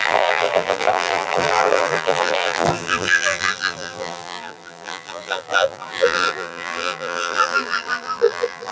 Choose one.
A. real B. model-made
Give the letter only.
B